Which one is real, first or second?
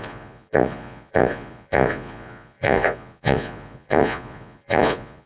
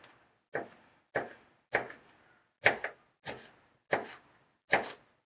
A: second